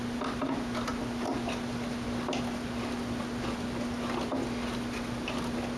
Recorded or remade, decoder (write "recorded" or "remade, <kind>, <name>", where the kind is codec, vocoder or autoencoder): recorded